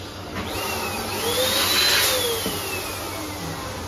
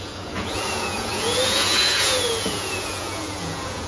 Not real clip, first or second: second